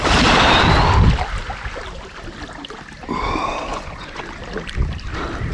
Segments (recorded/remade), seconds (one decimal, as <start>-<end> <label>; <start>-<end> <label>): 0.0-3.7 recorded; 3.7-4.2 remade; 4.2-5.5 recorded